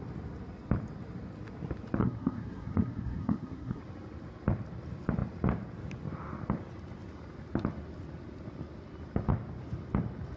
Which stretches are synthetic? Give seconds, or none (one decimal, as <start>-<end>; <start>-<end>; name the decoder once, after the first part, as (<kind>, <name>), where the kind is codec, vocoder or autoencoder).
2.0-3.8 (codec, SNAC)